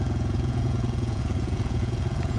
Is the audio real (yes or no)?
no